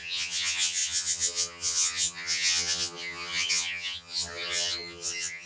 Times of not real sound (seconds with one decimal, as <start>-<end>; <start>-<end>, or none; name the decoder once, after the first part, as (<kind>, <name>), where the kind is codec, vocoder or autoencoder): 0.0-5.5 (vocoder, HiFi-GAN)